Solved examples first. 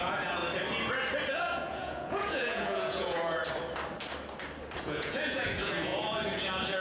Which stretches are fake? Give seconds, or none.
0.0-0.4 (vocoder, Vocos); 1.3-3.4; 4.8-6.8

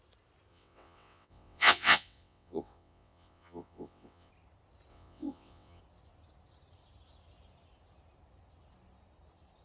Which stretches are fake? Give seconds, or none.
0.5-4.3 (vocoder, WaveNeXt); 4.9-5.8

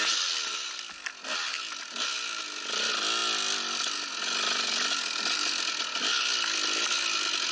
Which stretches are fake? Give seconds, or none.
none

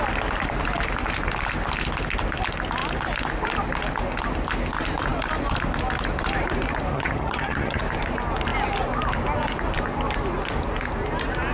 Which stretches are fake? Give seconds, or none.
6.9-7.8 (vocoder, HiFi-GAN)